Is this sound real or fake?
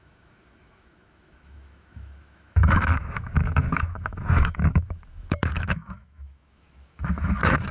fake